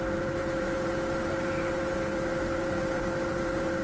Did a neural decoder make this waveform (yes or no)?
yes